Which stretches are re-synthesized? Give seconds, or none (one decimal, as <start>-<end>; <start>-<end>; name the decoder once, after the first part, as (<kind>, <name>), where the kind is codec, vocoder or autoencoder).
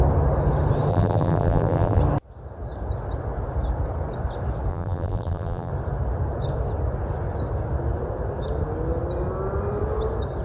0.9-2.0 (vocoder, BigVGAN v2); 4.7-5.7